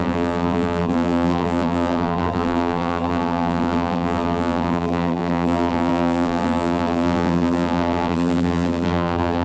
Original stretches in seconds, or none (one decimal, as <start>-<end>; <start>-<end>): none